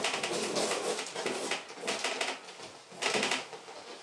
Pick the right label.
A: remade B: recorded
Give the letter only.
B